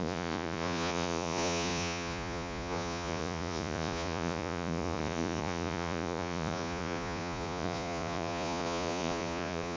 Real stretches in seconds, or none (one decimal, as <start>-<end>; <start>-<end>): none